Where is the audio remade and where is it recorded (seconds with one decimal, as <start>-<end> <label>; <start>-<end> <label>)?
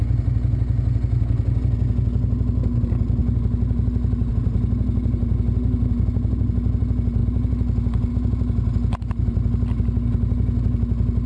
0.0-11.3 recorded